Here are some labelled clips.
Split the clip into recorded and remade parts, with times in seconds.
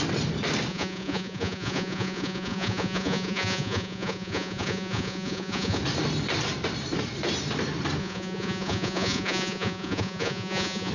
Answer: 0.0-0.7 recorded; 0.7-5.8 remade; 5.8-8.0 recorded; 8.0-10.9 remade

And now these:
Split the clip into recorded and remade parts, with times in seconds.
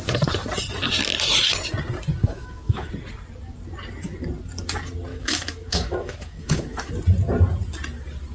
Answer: 0.0-2.2 recorded; 2.2-2.9 remade; 2.9-5.1 recorded; 5.1-6.9 remade; 6.9-8.3 recorded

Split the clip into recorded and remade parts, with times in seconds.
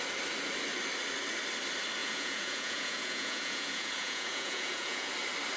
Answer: 0.0-2.0 recorded; 2.0-5.1 remade; 5.1-5.6 recorded